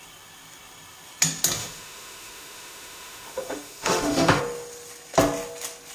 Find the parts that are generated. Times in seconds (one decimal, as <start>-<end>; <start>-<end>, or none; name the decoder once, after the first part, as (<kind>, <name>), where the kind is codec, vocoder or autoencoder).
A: 1.6-4.4 (autoencoder, DAC-VAE)